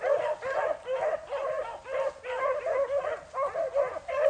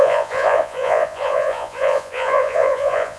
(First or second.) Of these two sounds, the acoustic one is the first